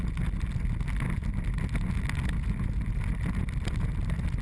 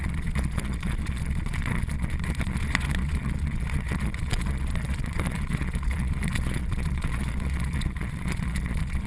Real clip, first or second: first